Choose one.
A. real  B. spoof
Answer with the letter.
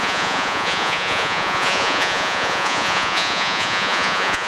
B